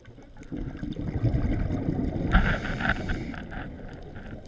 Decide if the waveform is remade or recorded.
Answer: recorded